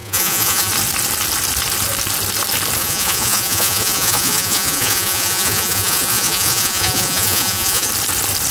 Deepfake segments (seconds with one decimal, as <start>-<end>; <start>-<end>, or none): 0.0-0.7; 2.8-7.9

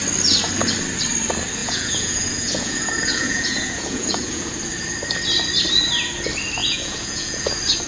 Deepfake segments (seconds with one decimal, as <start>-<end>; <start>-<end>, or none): 1.6-4.5; 6.6-7.5

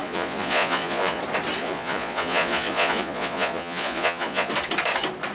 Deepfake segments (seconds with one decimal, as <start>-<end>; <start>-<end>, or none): 0.0-1.2; 1.6-4.5

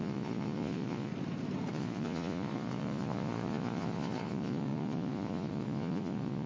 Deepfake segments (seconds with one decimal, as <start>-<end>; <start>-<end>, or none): 0.0-1.1; 1.7-6.5

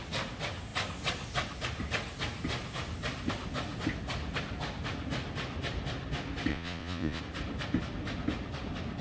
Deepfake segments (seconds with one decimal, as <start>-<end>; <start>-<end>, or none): 6.5-7.2

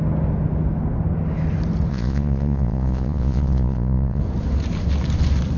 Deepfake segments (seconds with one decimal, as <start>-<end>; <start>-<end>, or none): 1.9-4.2

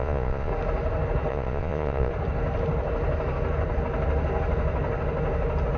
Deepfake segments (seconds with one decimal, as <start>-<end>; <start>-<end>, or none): 0.0-0.5; 1.3-2.1

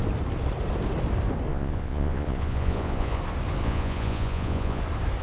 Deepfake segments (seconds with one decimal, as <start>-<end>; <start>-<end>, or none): 1.5-3.2; 3.6-4.8